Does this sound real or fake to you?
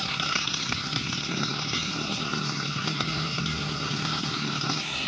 fake